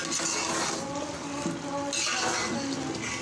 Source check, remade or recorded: recorded